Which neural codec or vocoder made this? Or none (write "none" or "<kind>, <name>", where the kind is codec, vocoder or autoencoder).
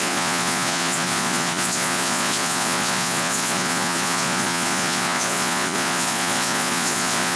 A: vocoder, Vocos